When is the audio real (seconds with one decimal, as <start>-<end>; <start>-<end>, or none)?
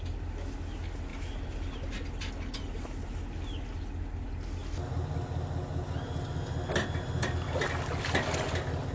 0.0-8.9